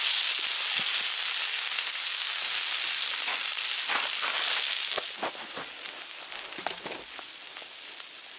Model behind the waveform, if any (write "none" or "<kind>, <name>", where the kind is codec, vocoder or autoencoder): none